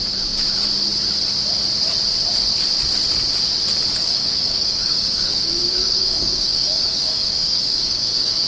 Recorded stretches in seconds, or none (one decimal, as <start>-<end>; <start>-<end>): 0.0-4.0